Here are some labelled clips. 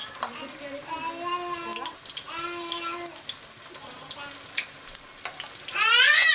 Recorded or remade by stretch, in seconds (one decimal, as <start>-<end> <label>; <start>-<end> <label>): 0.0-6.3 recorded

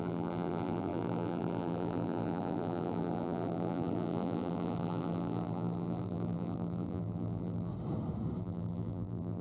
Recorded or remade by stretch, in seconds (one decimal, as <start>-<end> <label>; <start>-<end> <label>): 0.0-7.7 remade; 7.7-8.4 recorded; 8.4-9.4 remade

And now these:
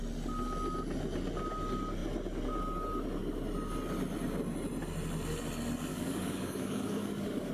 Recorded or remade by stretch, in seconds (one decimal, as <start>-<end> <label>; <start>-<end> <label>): 0.0-5.9 recorded; 5.9-7.5 remade

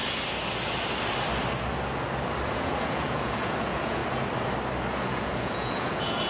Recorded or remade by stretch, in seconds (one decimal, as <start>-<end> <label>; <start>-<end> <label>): 0.0-2.5 recorded; 2.5-4.0 remade; 4.0-4.9 recorded; 4.9-6.3 remade

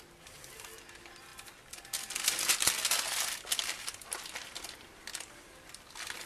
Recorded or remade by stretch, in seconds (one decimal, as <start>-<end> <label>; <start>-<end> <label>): 0.0-6.3 recorded

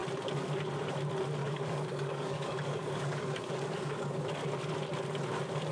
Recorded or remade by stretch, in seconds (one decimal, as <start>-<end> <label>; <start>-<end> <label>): 0.0-1.4 recorded; 1.4-4.3 remade; 4.3-5.7 recorded

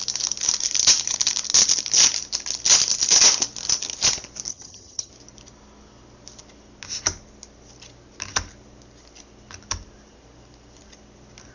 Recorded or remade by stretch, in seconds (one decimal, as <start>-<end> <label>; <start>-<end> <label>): 0.0-4.5 recorded; 4.5-5.1 remade; 5.1-11.5 recorded

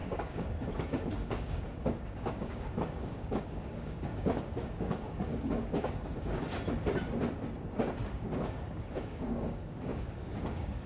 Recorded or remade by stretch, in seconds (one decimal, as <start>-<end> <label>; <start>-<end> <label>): 0.0-6.4 remade; 6.4-8.0 recorded; 8.0-10.9 remade